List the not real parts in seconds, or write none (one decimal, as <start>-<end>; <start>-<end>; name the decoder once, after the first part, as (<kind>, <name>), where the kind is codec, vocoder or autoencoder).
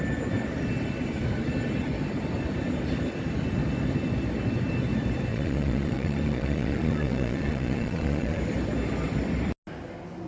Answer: 5.3-8.4 (vocoder, Vocos)